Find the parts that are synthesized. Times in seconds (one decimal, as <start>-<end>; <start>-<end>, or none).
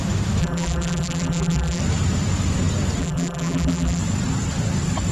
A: 0.4-1.8; 3.0-4.0